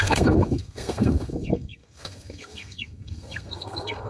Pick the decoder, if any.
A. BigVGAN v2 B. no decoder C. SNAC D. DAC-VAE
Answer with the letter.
C